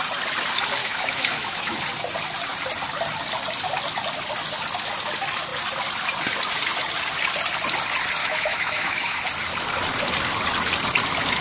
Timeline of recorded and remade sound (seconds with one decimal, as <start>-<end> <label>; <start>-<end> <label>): 0.0-0.8 recorded; 0.8-1.8 remade; 1.8-8.2 recorded; 8.2-9.2 remade; 9.2-11.4 recorded